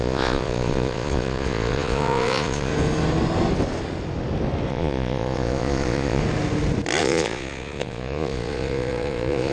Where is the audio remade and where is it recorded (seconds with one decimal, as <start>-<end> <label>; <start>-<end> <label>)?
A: 0.0-2.7 remade; 2.7-4.7 recorded; 4.7-6.2 remade; 6.2-7.0 recorded; 7.0-9.5 remade